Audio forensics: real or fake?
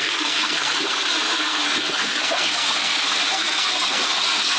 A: fake